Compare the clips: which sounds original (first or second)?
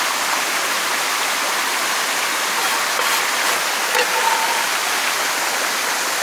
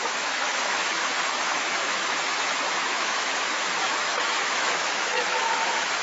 first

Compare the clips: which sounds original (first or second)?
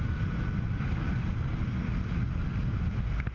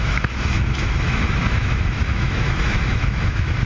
first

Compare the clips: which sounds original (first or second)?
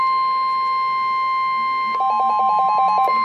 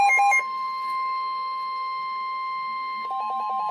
first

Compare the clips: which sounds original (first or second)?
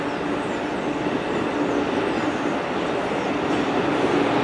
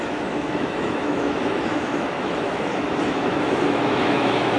first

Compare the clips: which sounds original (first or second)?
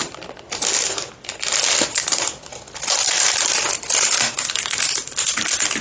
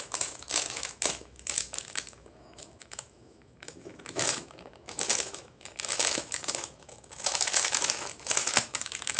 first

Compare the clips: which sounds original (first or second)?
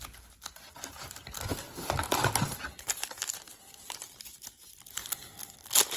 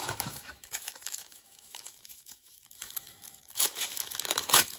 first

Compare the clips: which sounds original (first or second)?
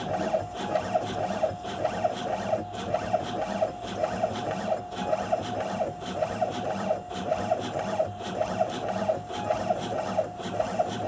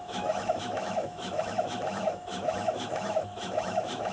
first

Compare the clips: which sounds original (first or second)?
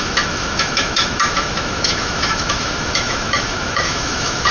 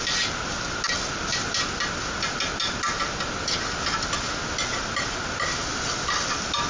second